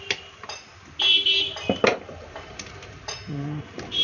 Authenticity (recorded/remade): remade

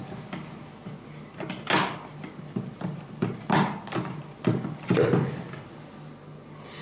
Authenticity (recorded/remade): recorded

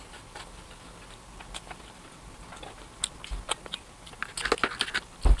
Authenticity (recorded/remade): recorded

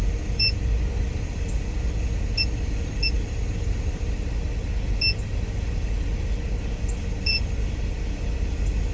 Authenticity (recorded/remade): recorded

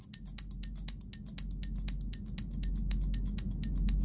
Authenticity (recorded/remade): recorded